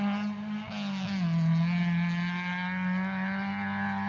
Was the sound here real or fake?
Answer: real